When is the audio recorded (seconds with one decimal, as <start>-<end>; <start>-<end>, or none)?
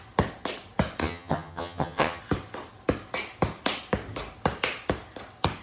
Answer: 0.0-1.0; 2.2-5.6